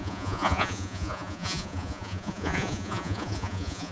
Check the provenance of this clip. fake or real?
fake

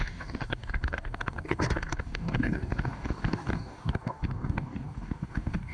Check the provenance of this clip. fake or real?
fake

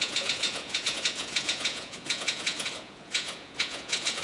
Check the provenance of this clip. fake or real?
fake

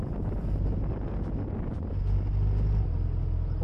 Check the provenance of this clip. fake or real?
real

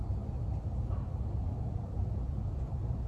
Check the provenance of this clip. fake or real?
real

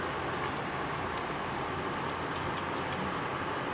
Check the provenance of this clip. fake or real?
real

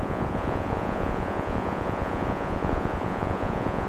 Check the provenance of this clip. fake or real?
fake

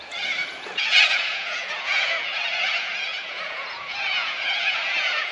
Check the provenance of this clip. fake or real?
fake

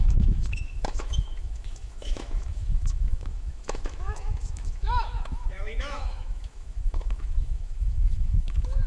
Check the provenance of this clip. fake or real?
fake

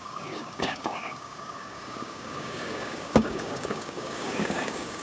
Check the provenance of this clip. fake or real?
fake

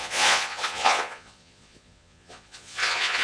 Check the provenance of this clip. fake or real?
fake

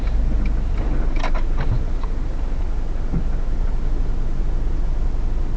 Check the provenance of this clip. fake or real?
real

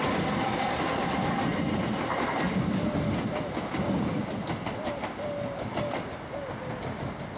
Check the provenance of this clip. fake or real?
real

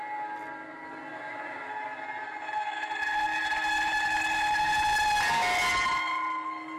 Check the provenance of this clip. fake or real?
real